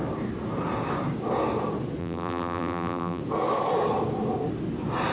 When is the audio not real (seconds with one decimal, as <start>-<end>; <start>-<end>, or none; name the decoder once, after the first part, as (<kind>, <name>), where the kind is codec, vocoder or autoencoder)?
2.0-3.2 (vocoder, BigVGAN v2)